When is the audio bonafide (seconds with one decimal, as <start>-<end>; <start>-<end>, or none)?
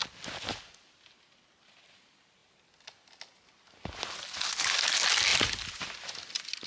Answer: 0.0-6.7